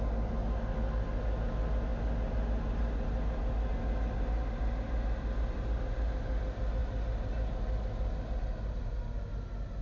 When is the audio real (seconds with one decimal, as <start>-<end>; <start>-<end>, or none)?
0.0-9.8